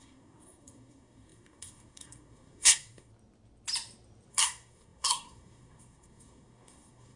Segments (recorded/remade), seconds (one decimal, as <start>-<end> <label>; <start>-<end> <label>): 0.0-3.1 remade; 3.1-4.3 recorded; 4.3-7.2 remade